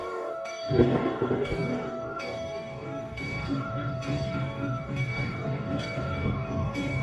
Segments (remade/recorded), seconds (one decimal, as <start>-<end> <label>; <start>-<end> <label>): 0.0-7.0 remade